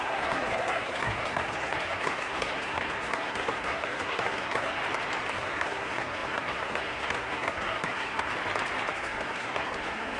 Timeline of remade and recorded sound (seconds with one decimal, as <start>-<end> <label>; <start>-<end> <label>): 0.0-4.8 remade; 4.8-5.3 recorded; 5.3-8.3 remade; 8.3-8.9 recorded; 8.9-10.2 remade